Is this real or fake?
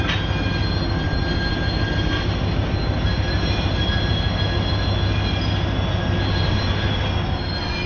real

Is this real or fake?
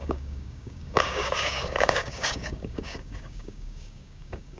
fake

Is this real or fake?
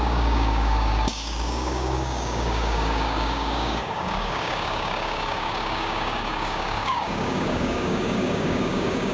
fake